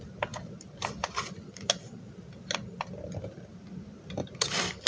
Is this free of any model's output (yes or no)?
yes